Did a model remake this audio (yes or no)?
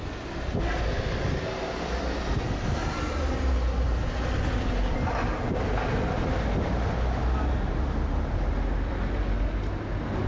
no